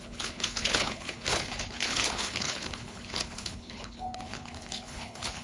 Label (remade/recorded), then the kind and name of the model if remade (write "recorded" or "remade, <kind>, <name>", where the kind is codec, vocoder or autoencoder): remade, codec, HILCodec